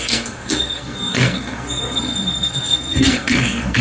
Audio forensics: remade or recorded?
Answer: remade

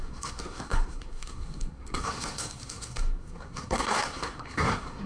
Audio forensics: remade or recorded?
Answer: remade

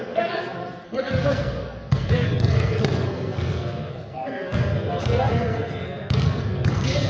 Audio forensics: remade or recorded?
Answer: remade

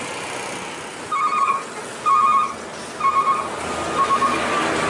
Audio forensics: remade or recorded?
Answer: recorded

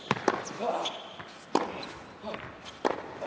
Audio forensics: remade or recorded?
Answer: recorded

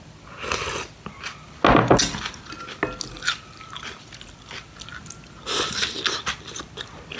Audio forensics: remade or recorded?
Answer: recorded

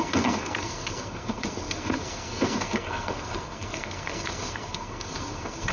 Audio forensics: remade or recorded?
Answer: remade